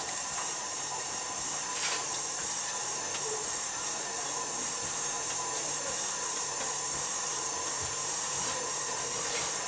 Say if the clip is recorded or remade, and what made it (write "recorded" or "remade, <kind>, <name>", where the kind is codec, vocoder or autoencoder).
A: remade, vocoder, BigVGAN v2